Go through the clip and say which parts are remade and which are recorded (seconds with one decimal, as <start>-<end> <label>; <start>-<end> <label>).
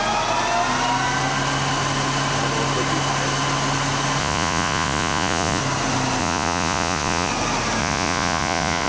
0.0-4.2 recorded; 4.2-5.6 remade; 5.6-6.2 recorded; 6.2-7.3 remade; 7.3-7.8 recorded; 7.8-8.9 remade